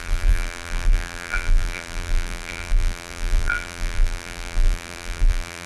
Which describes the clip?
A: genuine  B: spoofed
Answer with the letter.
B